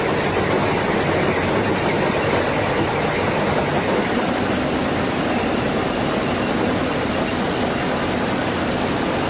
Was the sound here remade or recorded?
recorded